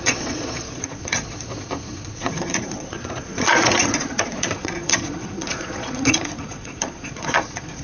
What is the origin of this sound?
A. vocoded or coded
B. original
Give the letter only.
A